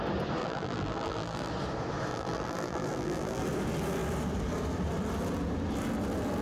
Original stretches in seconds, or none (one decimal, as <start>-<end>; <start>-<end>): 0.0-0.4; 1.5-2.1; 3.4-6.4